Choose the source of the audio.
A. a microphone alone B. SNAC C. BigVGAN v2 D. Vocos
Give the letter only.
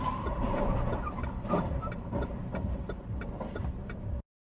C